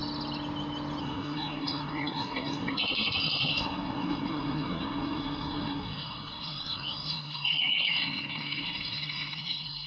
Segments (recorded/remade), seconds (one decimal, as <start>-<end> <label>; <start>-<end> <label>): 0.0-1.0 recorded; 1.0-9.9 remade